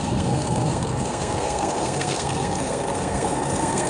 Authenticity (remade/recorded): remade